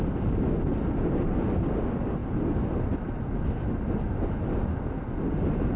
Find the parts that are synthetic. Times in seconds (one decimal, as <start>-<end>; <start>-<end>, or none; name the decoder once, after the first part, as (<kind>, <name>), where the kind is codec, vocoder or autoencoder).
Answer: none